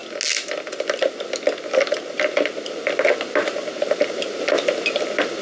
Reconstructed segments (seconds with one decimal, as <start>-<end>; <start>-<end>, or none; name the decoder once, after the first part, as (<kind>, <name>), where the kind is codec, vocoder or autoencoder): 3.4-4.4 (vocoder, BigVGAN v2)